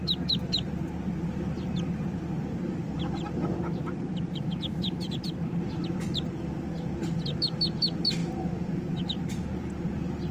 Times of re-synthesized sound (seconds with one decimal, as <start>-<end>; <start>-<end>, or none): 2.4-6.2; 8.2-9.9

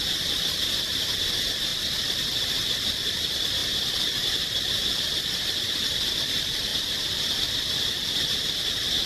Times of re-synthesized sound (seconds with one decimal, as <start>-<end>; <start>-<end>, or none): 3.6-4.3; 6.7-8.4

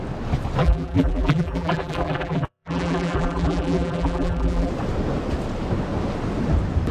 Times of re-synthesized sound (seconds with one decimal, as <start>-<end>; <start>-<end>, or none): 0.6-4.7

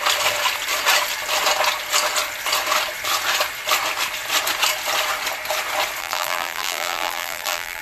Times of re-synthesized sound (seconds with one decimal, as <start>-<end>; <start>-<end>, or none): 6.0-7.8

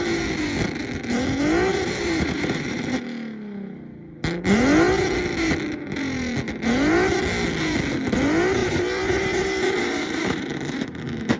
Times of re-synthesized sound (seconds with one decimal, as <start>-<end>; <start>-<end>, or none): 1.7-2.9; 8.6-11.0

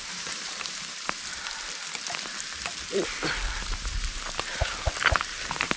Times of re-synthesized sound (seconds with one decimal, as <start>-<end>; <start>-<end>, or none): 0.0-1.3; 3.6-4.7; 5.3-5.8

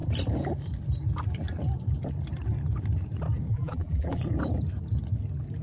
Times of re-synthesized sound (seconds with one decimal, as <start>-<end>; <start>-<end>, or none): 3.5-4.2

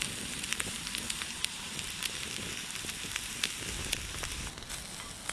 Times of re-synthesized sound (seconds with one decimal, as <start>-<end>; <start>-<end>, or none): 0.5-3.5